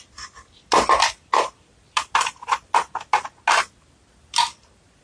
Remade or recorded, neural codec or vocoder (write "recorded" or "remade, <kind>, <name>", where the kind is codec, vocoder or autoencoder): recorded